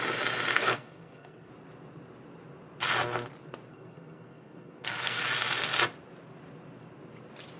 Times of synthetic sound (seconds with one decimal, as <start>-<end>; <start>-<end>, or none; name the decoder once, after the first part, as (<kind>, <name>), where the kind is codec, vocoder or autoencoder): 0.5-1.5 (codec, SNAC); 3.7-5.2